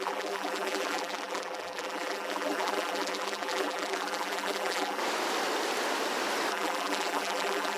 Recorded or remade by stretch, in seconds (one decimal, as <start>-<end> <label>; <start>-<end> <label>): 0.0-5.0 remade; 5.0-6.5 recorded; 6.5-7.8 remade